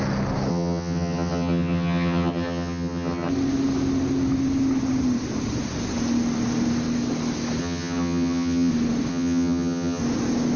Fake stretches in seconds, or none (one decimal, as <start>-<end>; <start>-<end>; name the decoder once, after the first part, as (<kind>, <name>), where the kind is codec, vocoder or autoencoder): 0.5-3.3 (vocoder, HiFi-GAN); 7.6-8.7; 9.1-10.0